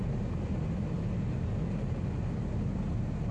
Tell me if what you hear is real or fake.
real